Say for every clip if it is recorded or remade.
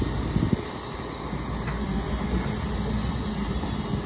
recorded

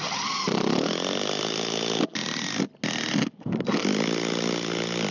recorded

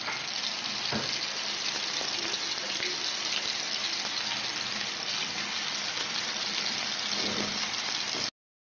recorded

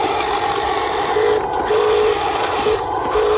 recorded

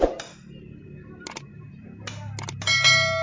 recorded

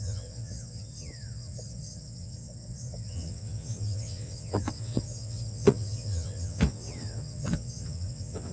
remade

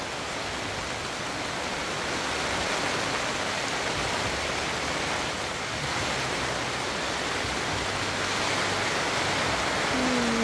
recorded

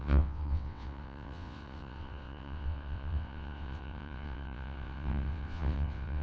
remade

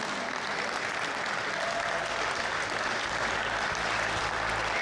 recorded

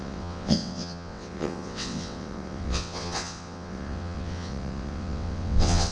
remade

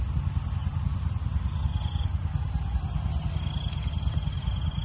recorded